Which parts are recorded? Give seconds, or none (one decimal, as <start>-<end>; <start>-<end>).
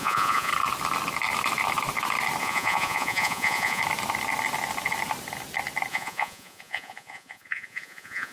0.5-2.4; 3.8-5.9